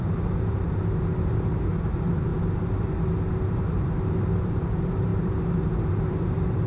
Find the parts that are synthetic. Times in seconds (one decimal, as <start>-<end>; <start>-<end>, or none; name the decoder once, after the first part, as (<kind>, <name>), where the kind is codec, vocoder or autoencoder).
0.0-2.3 (vocoder, BigVGAN v2); 3.5-6.7